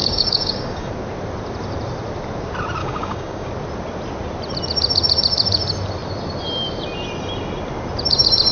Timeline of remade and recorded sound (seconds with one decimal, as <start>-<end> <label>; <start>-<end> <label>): 0.0-0.9 remade; 0.9-2.8 recorded; 2.8-3.5 remade; 3.5-8.5 recorded